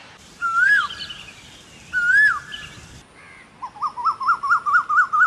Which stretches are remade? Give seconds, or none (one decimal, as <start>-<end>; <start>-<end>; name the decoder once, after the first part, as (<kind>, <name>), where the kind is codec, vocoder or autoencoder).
none